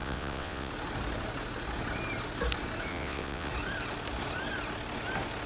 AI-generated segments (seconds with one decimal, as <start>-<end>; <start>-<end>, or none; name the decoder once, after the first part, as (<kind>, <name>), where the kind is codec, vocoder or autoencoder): 0.0-0.7 (vocoder, WaveNeXt); 2.9-3.5